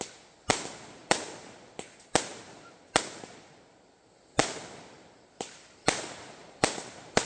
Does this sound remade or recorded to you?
recorded